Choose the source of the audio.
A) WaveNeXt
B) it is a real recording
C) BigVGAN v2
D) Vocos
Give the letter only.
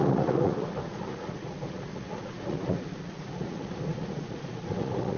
D